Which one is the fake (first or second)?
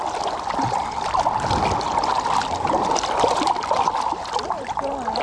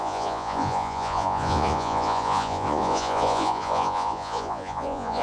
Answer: second